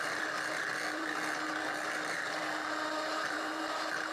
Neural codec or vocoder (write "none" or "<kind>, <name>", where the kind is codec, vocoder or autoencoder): vocoder, BigVGAN v2